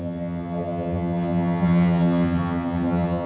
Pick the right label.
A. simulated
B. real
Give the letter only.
A